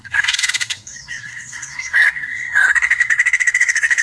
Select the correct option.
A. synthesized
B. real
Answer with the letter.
A